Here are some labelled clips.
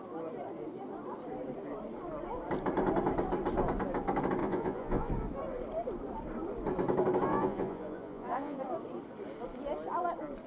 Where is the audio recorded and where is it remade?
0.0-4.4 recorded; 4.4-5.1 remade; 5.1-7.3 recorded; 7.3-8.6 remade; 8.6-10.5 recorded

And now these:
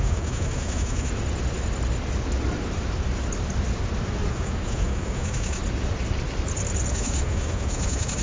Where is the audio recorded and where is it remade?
0.0-1.1 remade; 1.1-4.3 recorded; 4.3-5.6 remade; 5.6-6.9 recorded; 6.9-8.2 remade

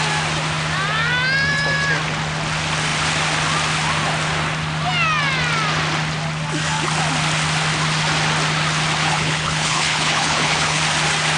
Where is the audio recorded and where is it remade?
0.0-9.0 recorded; 9.0-10.8 remade; 10.8-11.4 recorded

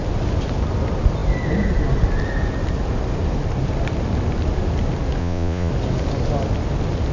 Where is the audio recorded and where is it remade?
0.0-5.2 recorded; 5.2-5.7 remade; 5.7-7.1 recorded

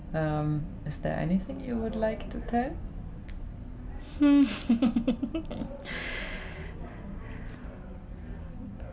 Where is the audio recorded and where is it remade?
0.0-8.9 recorded

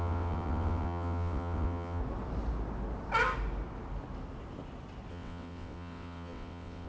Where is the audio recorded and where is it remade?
0.0-2.0 remade; 2.0-5.1 recorded; 5.1-6.9 remade

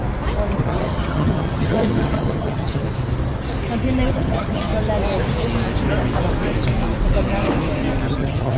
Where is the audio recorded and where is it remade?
0.0-0.6 recorded; 0.6-2.8 remade; 2.8-4.1 recorded; 4.1-4.7 remade; 4.7-8.1 recorded; 8.1-8.6 remade